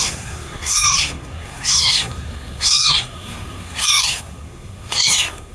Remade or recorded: remade